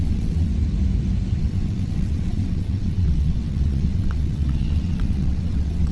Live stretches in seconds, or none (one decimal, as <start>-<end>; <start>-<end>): 0.5-1.4